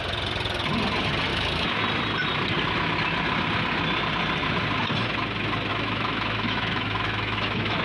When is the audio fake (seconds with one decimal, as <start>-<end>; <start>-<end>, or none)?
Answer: 1.3-1.8; 5.7-7.8